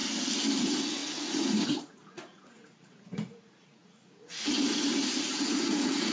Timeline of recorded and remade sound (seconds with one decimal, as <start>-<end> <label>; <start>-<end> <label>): 0.0-0.6 recorded; 0.6-6.1 remade